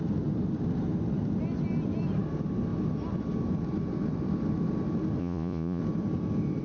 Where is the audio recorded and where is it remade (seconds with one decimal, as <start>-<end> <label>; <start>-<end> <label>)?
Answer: 0.0-5.2 recorded; 5.2-5.8 remade; 5.8-6.6 recorded